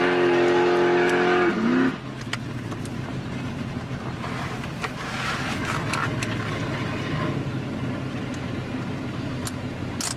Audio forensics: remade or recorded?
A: recorded